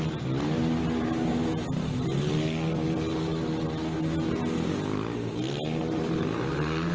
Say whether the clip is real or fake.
real